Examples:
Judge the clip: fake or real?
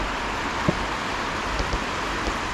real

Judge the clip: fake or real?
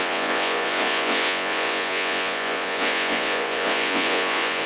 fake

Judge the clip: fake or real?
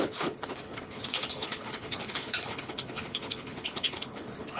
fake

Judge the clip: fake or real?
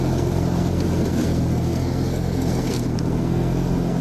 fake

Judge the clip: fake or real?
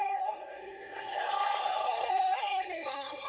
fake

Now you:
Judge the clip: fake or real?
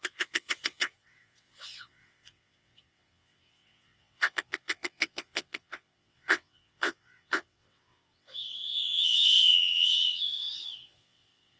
fake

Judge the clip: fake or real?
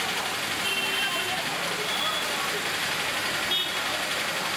real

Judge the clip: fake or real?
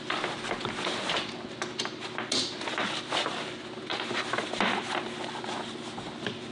real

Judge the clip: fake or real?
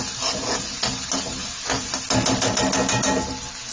real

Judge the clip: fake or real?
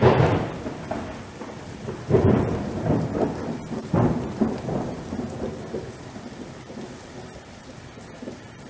fake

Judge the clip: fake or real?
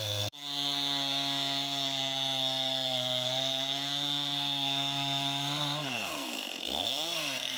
fake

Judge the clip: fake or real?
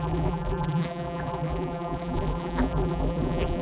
fake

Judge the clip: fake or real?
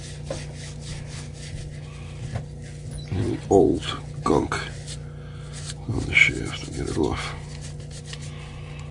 real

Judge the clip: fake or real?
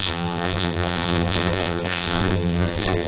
fake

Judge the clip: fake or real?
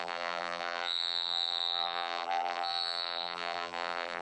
fake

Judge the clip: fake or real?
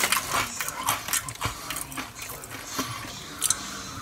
real